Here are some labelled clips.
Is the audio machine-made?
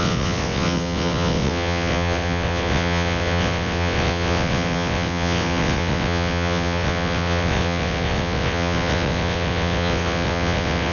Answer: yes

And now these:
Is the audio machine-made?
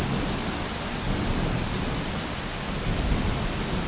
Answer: no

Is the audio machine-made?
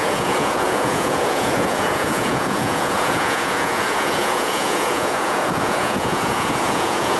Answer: yes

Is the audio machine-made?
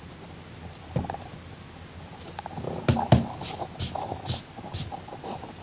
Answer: no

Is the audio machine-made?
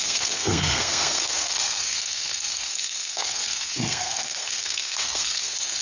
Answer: yes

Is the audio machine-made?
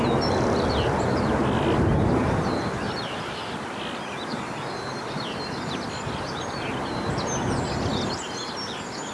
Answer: no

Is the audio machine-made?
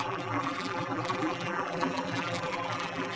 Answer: yes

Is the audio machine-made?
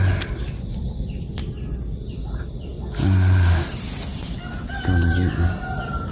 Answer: no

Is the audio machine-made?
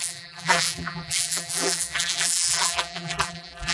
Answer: yes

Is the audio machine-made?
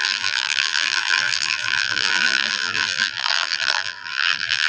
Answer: yes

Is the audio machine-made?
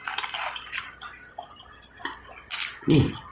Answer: no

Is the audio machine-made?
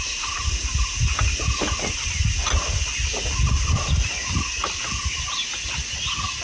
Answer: no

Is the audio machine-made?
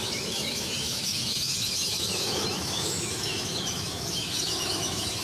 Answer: yes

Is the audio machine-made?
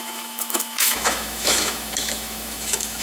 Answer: yes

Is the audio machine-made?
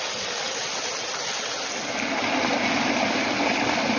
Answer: no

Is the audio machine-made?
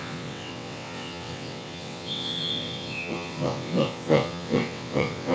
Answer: yes